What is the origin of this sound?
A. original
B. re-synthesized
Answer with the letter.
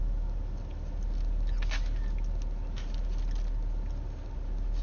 A